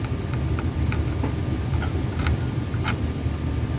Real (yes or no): yes